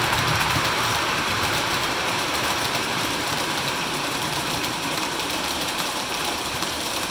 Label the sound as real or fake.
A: fake